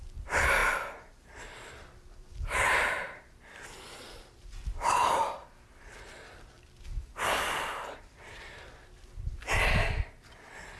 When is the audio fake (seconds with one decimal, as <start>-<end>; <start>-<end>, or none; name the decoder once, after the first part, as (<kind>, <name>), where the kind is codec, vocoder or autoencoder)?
0.0-10.8 (vocoder, BigVGAN v2)